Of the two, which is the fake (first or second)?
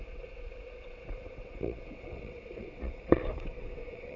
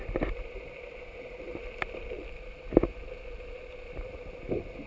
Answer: first